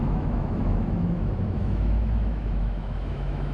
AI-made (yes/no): yes